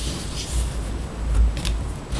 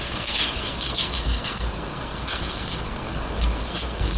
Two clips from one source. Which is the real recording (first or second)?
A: first